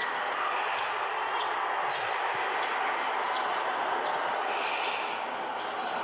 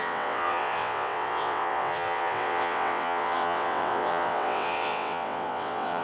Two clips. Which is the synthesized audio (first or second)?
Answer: second